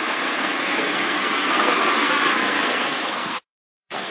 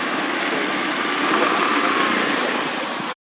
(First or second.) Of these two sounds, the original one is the second